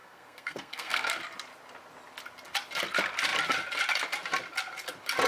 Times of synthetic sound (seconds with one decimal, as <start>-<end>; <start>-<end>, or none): 0.0-1.1